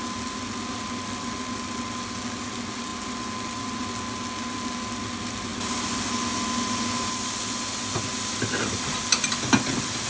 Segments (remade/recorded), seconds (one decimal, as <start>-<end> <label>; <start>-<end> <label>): 0.0-10.1 recorded